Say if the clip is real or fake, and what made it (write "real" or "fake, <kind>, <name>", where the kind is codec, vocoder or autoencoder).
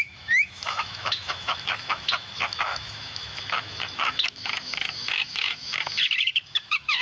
fake, autoencoder, DAC-VAE